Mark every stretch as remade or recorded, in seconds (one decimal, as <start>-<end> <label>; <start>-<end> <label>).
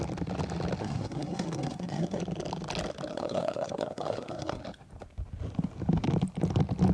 0.0-0.8 recorded; 0.8-2.2 remade; 2.2-3.1 recorded; 3.1-4.6 remade; 4.6-6.9 recorded